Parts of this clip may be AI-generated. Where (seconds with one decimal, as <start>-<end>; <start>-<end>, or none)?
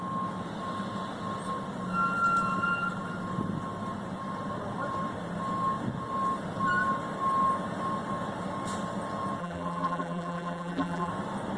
9.4-11.1